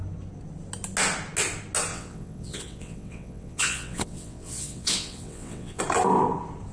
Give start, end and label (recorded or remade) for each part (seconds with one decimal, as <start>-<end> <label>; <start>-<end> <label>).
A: 0.0-1.9 recorded; 1.9-5.8 remade; 5.8-6.7 recorded